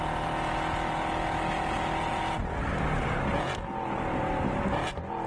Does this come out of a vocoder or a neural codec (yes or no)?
no